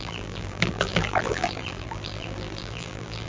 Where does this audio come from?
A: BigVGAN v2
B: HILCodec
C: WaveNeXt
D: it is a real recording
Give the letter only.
A